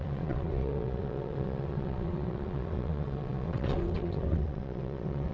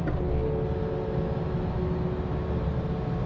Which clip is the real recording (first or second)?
second